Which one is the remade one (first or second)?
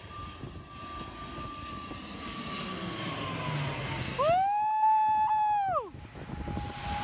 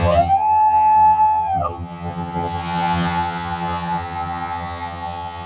second